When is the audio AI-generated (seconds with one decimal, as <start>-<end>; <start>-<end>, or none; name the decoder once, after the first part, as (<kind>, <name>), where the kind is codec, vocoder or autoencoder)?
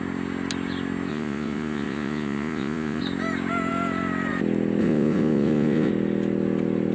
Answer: 1.1-3.0 (vocoder, Vocos); 4.8-5.9